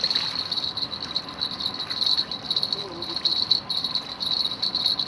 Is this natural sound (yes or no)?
yes